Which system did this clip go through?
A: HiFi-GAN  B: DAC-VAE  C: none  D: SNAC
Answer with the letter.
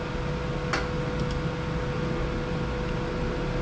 C